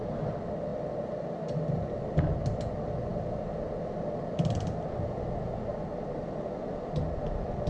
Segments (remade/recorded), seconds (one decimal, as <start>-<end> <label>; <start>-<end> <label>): 0.0-7.7 recorded